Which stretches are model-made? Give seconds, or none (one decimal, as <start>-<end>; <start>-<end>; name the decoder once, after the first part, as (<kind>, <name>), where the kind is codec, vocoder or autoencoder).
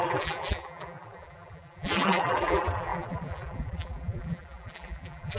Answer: 0.0-5.4 (vocoder, BigVGAN v2)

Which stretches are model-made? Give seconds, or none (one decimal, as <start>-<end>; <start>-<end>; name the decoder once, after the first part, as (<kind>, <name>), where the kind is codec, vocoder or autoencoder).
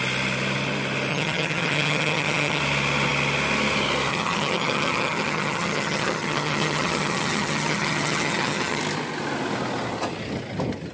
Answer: 1.1-2.6 (vocoder, HiFi-GAN); 4.1-8.8